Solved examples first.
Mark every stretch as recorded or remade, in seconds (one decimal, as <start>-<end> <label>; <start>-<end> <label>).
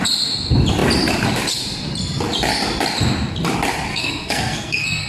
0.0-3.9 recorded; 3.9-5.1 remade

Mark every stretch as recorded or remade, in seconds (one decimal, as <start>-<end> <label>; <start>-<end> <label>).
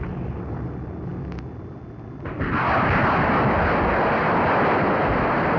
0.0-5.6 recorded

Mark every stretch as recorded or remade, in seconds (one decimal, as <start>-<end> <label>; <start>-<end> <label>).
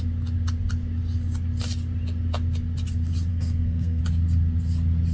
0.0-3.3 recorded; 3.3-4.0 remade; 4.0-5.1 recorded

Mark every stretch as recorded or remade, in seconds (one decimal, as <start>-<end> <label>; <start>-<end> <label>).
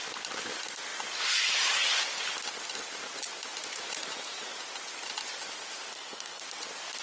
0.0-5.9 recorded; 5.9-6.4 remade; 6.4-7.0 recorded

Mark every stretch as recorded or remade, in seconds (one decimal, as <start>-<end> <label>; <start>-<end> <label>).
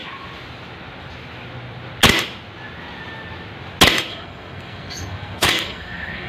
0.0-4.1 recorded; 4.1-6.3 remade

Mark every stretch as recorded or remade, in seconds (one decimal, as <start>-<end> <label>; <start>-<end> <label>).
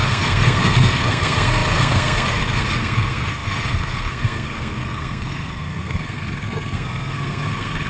0.0-7.9 remade